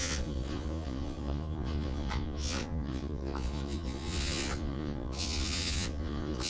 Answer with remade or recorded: remade